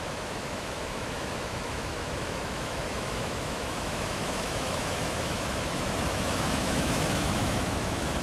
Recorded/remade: remade